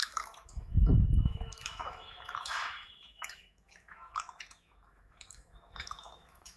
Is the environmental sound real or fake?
fake